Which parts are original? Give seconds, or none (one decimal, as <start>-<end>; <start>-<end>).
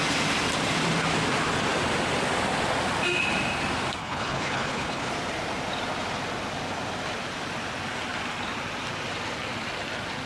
0.0-4.0; 5.1-10.3